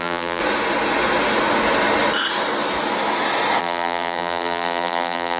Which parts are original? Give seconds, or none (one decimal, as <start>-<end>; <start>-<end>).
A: 0.4-3.6